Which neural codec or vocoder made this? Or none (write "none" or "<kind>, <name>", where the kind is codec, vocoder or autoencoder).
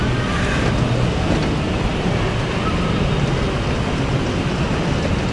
none